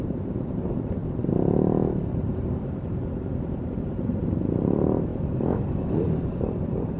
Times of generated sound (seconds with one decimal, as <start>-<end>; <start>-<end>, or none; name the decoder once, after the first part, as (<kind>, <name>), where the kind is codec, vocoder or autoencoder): 0.0-1.0 (vocoder, BigVGAN v2); 2.1-5.1; 5.6-7.0